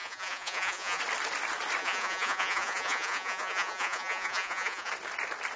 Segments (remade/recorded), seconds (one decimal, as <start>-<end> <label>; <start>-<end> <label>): 0.0-1.0 remade; 1.0-1.8 recorded; 1.8-4.9 remade; 4.9-5.6 recorded